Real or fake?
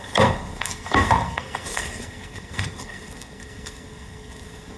fake